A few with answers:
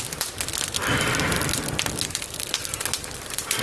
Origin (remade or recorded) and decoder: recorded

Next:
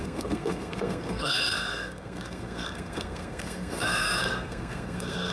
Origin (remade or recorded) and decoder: remade, codec, SNAC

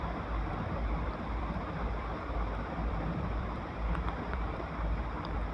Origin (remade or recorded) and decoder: remade, vocoder, BigVGAN v2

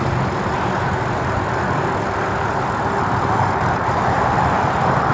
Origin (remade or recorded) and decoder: remade, vocoder, BigVGAN v2